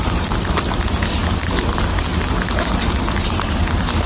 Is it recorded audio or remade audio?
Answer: recorded